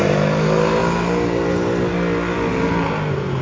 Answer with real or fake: real